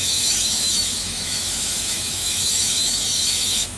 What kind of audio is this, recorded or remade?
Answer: remade